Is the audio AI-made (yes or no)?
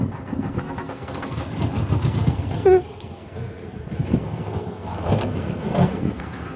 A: yes